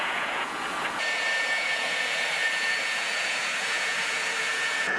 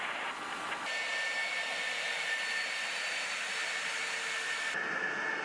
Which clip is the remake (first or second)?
first